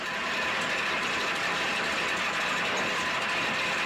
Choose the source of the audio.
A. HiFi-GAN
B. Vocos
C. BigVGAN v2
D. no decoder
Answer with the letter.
C